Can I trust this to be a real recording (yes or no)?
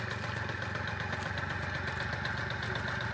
yes